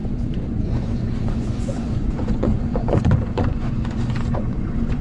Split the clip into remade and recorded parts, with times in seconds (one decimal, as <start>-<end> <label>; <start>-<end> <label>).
0.0-5.0 remade